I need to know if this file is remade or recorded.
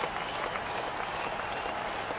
recorded